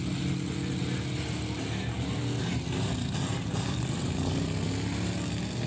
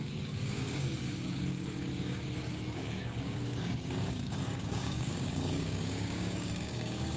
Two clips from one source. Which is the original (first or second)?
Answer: first